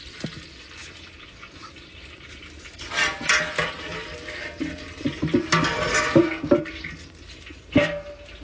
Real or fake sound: real